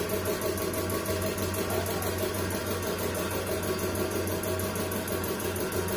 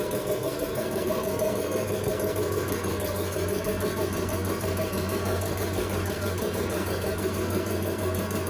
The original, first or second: first